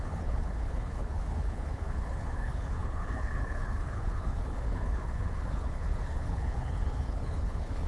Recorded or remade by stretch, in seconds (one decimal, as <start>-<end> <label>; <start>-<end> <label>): 0.0-7.9 remade